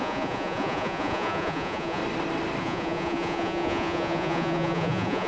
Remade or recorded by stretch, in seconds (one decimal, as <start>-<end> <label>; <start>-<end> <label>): 0.0-2.0 remade; 2.0-2.6 recorded; 2.6-5.3 remade

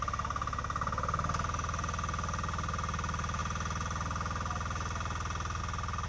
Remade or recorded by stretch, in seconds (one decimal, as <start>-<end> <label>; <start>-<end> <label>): 0.0-6.1 recorded

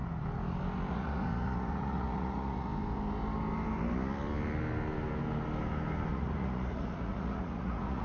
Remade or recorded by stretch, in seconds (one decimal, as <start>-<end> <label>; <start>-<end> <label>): 0.0-0.9 recorded; 0.9-2.7 remade; 2.7-6.1 recorded; 6.1-8.0 remade

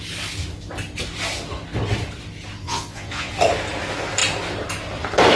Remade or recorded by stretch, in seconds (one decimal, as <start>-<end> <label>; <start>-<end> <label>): 0.0-2.6 recorded; 2.6-3.3 remade; 3.3-5.4 recorded

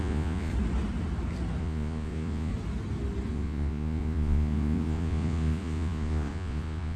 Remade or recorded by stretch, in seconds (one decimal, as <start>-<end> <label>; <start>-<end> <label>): 0.0-0.5 remade; 0.5-1.6 recorded; 1.6-2.5 remade; 2.5-3.3 recorded; 3.3-7.0 remade

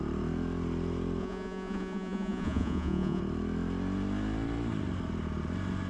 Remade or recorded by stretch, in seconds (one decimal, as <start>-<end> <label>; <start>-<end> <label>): 0.0-1.2 recorded; 1.2-3.2 remade; 3.2-5.9 recorded

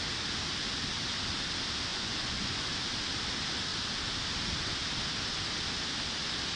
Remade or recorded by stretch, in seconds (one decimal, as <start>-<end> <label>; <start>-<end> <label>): 0.0-1.9 recorded; 1.9-2.7 remade; 2.7-6.6 recorded